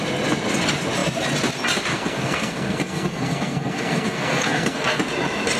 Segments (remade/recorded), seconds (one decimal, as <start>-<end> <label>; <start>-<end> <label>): 0.0-1.9 recorded; 1.9-5.0 remade; 5.0-5.6 recorded